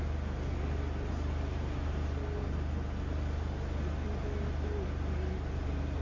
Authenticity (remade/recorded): recorded